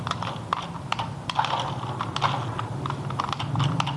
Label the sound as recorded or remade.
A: recorded